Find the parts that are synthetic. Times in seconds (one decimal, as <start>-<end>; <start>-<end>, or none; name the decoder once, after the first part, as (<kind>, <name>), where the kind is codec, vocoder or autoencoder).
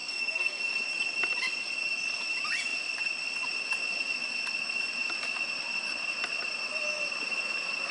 0.0-0.6 (codec, SNAC)